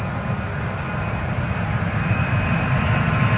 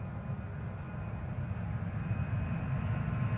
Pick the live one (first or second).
second